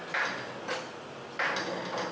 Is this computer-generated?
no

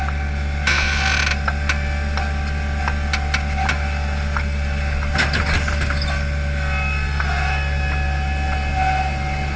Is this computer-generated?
no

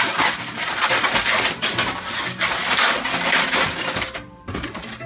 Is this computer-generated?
no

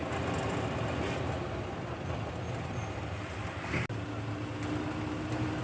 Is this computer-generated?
no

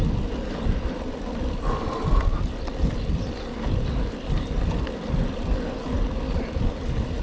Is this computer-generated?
no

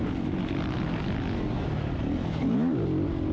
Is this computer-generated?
no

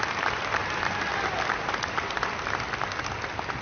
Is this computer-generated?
no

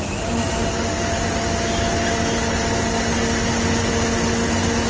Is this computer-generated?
no